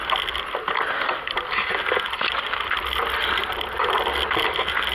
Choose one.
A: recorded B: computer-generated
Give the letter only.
A